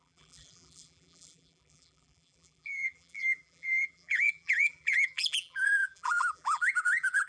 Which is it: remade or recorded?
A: remade